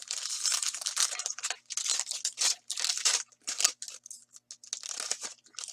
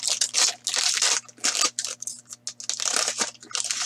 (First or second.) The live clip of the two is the second